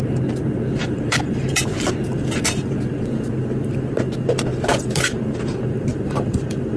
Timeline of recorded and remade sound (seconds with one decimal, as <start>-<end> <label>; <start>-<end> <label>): 0.0-0.8 recorded; 0.8-1.6 remade; 1.6-5.9 recorded; 5.9-6.8 remade